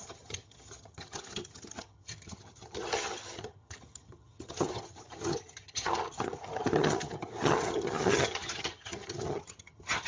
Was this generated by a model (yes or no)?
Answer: yes